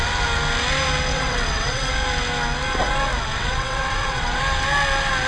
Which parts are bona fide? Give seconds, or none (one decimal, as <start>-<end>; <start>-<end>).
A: 0.0-1.1; 1.9-3.3; 4.4-5.3